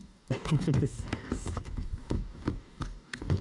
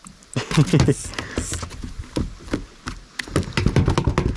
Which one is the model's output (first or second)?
first